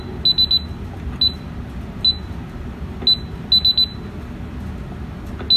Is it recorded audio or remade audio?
recorded